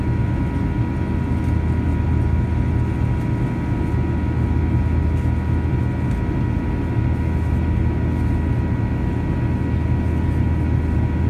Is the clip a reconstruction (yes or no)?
no